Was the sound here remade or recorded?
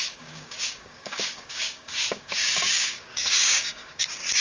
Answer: remade